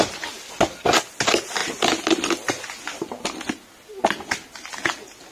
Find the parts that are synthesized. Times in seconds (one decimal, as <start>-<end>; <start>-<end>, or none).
none